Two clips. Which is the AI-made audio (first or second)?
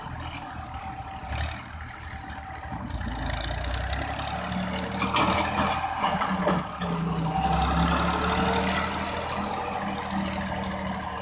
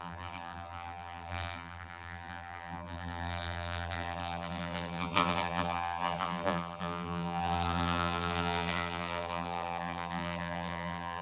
second